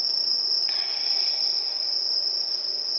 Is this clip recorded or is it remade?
remade